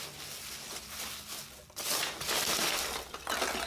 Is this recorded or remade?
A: recorded